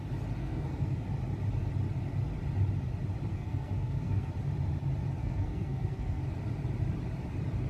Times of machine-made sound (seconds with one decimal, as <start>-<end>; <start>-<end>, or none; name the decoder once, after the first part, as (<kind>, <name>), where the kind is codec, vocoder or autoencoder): 0.4-1.0 (codec, SNAC); 3.3-4.3; 5.2-6.2